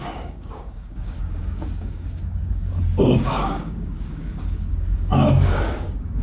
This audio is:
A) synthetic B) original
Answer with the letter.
A